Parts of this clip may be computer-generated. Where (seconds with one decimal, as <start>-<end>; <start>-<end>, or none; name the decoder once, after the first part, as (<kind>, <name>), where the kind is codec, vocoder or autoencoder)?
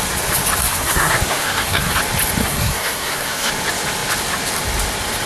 0.6-1.9 (codec, SNAC); 2.4-3.5